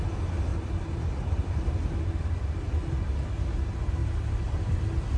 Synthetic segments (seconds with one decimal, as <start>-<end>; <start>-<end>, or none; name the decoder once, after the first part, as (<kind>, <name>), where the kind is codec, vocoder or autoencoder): 0.5-2.9 (vocoder, BigVGAN v2); 4.0-4.8